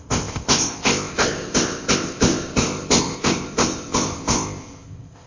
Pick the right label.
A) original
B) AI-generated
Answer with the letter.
B